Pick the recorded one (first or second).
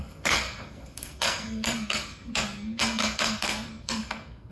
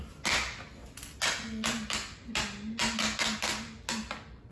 second